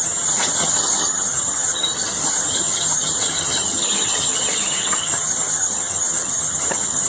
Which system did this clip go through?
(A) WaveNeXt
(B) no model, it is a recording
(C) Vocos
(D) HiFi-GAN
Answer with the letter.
D